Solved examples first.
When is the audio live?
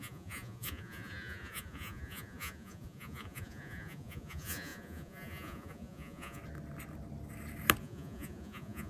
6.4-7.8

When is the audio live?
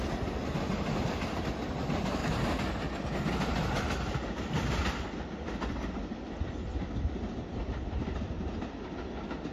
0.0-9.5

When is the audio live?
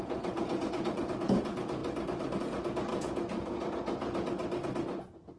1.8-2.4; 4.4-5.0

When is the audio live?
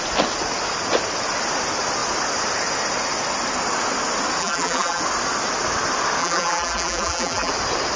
0.0-4.4; 5.0-6.2; 7.5-8.0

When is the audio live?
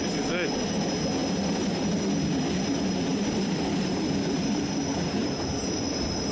0.0-1.2; 1.8-3.1; 4.6-6.3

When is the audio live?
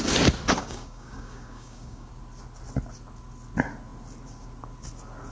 0.0-0.6; 2.1-5.3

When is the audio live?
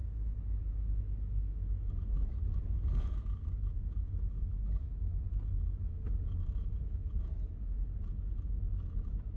none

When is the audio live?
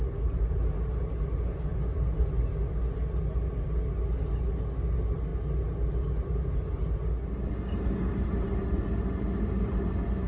0.0-10.3